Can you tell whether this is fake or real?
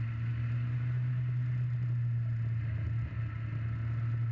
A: real